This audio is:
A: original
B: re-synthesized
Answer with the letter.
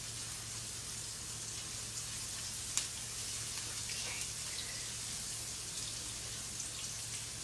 A